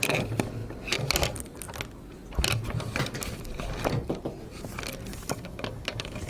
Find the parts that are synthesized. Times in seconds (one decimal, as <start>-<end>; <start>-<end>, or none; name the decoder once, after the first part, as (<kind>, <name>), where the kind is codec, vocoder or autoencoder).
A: 5.1-6.3 (codec, DAC)